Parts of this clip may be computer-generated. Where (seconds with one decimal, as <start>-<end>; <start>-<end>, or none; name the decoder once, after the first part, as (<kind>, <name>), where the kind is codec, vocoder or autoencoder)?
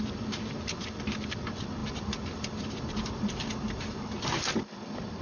1.8-4.6 (vocoder, BigVGAN v2)